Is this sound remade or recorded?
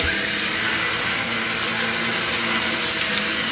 recorded